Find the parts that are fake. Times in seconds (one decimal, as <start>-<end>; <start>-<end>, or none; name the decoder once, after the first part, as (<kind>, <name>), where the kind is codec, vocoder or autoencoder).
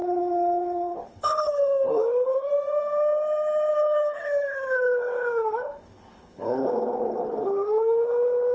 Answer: 0.0-2.5 (codec, HILCodec); 3.7-8.5